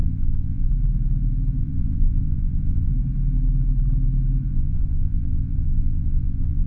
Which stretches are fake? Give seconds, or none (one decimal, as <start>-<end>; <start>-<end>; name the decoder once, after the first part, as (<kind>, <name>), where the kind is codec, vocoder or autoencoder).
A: 0.0-0.7 (vocoder, Vocos); 1.6-2.9; 4.5-6.7